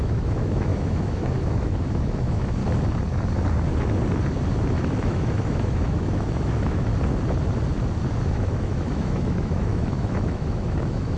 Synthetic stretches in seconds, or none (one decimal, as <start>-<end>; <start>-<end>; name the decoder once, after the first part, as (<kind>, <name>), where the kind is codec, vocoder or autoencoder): 0.0-2.6 (autoencoder, DAC-VAE); 4.7-6.9; 8.3-11.2